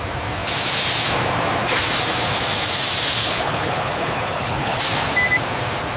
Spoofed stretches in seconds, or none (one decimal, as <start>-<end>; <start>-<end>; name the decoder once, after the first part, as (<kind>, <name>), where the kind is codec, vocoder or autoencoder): 3.2-4.8 (codec, HILCodec)